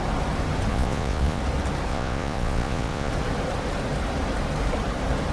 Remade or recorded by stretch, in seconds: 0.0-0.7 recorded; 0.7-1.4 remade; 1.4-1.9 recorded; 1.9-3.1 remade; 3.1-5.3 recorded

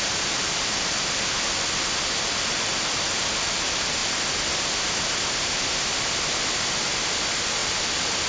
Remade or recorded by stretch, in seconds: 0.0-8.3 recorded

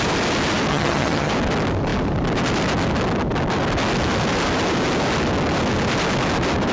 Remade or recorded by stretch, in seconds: 0.0-0.7 recorded; 0.7-1.3 remade; 1.3-6.7 recorded